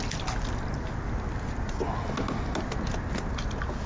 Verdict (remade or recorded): recorded